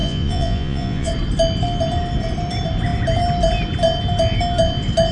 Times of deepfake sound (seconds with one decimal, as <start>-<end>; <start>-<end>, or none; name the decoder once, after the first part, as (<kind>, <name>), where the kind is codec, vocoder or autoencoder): 0.0-1.1 (vocoder, Vocos)